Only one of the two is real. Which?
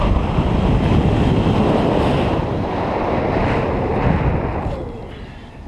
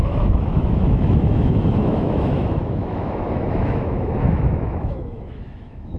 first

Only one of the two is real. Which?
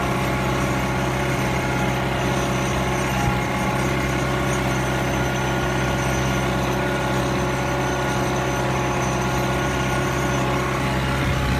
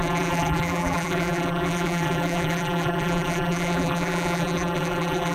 first